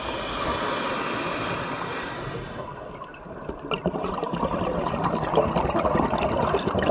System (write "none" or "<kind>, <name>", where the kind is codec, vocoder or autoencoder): none